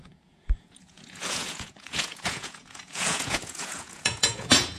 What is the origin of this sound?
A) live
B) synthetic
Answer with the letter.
B